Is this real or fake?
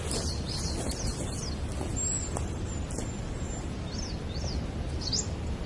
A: real